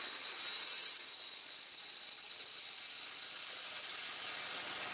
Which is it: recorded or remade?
recorded